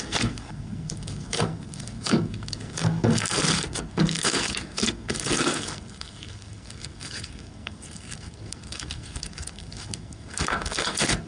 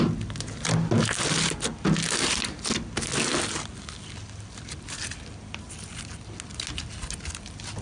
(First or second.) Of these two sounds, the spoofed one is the first